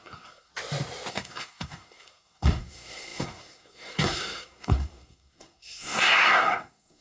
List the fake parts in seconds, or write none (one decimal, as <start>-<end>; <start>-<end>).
0.0-0.5; 1.1-7.0